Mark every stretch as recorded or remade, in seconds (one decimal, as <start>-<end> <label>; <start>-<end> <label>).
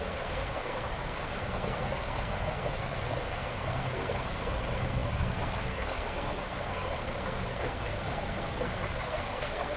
0.0-9.8 remade